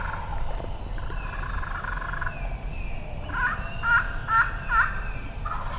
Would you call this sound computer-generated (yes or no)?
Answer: no